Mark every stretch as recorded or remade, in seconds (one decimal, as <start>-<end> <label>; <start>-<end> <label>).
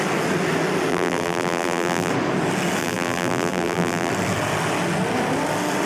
0.0-0.9 recorded; 0.9-2.1 remade; 2.1-2.8 recorded; 2.8-4.1 remade; 4.1-5.9 recorded